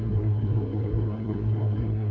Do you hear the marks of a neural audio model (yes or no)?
yes